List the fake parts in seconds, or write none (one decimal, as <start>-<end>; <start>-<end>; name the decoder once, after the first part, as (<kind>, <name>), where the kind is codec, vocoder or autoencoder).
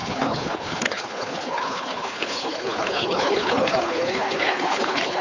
0.0-5.2 (codec, HILCodec)